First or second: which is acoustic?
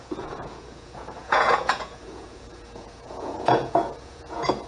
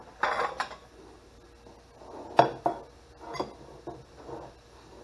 second